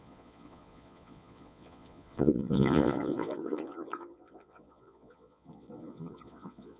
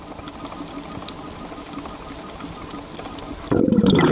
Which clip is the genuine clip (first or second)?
second